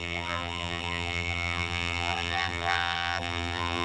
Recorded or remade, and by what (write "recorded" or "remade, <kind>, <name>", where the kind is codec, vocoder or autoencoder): remade, vocoder, BigVGAN v2